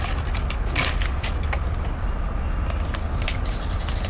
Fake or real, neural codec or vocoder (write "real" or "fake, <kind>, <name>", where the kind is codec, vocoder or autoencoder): real